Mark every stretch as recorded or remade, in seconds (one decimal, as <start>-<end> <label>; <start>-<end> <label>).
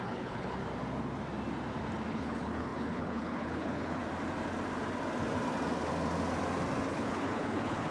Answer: 0.0-0.6 remade; 0.6-2.1 recorded; 2.1-4.0 remade; 4.0-6.9 recorded; 6.9-7.9 remade